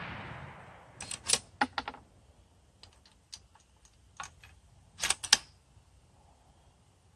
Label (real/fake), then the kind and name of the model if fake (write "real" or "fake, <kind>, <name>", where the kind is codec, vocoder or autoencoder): real